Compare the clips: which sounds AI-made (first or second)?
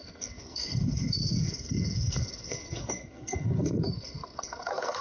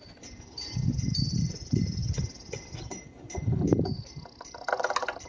first